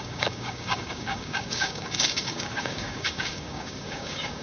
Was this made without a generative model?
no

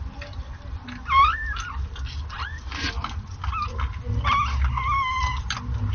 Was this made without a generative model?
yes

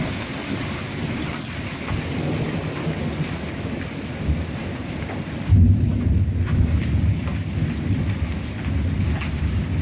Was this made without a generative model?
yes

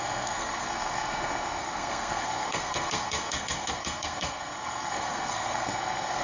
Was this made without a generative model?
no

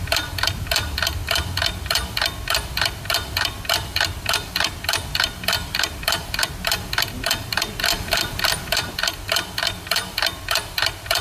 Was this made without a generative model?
no